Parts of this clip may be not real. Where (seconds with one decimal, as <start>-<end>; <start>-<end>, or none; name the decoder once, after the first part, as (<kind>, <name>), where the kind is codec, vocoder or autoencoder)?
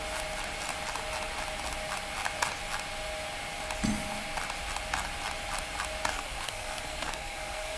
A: 6.1-7.8 (codec, SNAC)